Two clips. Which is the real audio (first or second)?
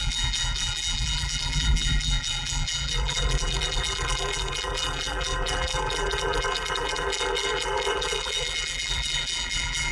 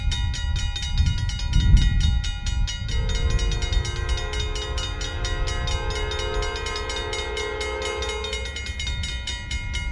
second